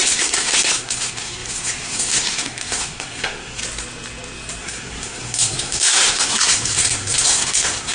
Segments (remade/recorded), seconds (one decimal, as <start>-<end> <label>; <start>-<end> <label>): 0.0-3.6 remade; 3.6-4.6 recorded; 4.6-7.9 remade